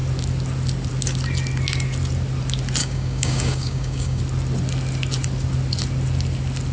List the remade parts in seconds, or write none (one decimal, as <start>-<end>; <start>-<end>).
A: 2.8-4.2